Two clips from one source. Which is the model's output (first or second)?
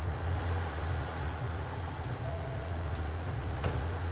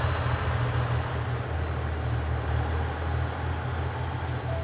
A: first